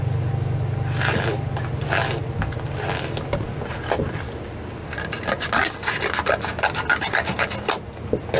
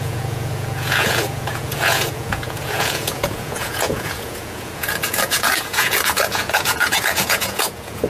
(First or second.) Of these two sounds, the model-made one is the second